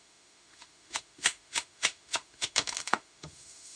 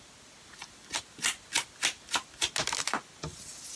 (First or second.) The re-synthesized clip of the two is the first